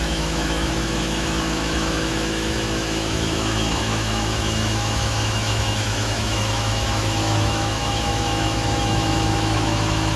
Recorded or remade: remade